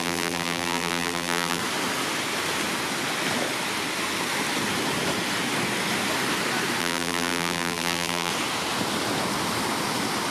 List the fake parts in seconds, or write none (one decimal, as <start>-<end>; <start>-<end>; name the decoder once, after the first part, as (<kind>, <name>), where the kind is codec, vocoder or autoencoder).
0.0-1.6 (vocoder, BigVGAN v2); 6.8-8.3